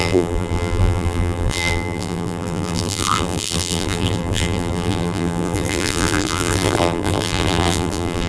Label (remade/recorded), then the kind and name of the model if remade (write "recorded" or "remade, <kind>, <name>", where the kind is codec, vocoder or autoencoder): remade, vocoder, BigVGAN v2